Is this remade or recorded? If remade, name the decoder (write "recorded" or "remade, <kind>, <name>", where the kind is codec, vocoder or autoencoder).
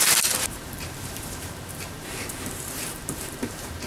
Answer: remade, vocoder, BigVGAN v2